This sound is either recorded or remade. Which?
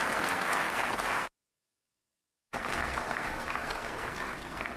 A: remade